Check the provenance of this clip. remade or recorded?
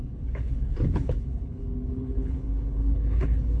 remade